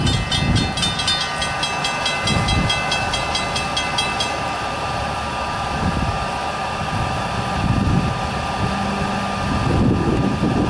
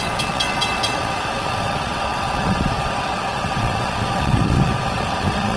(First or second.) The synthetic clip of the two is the second